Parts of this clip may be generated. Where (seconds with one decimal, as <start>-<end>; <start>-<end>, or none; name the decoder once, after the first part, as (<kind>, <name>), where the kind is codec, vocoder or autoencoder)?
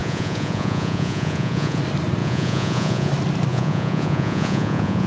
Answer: 0.0-1.8 (vocoder, Vocos); 2.2-3.1; 3.5-5.1